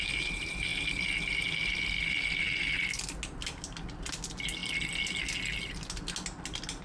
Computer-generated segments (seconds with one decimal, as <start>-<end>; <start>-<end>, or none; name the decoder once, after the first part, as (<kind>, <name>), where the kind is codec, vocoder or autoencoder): none